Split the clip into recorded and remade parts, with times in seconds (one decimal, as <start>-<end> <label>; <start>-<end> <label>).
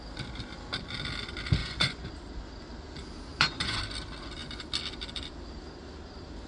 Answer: 0.0-1.6 recorded; 1.6-2.1 remade; 2.1-3.3 recorded; 3.3-3.8 remade; 3.8-6.5 recorded